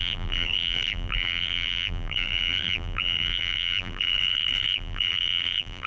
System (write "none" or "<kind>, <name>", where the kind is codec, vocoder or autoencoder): vocoder, BigVGAN v2